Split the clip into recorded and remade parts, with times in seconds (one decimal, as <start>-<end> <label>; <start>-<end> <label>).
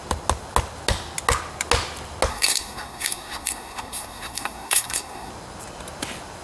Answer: 0.0-2.3 recorded; 2.3-5.3 remade; 5.3-6.4 recorded